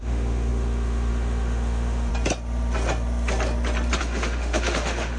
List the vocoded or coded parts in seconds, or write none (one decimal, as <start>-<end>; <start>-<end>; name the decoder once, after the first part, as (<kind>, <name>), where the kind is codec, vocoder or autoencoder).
0.0-2.1 (autoencoder, DAC-VAE); 4.0-5.2